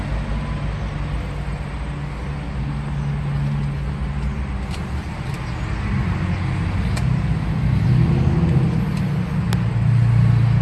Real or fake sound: real